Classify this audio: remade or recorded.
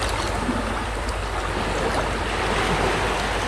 recorded